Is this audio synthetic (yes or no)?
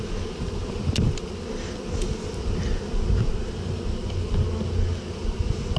no